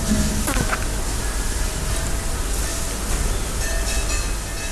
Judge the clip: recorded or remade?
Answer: recorded